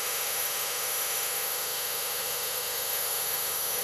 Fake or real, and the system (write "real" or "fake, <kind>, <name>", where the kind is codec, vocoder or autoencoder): fake, autoencoder, DAC-VAE